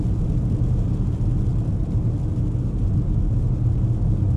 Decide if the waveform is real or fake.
real